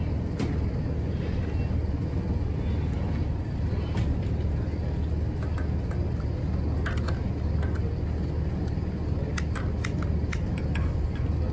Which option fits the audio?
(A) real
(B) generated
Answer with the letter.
A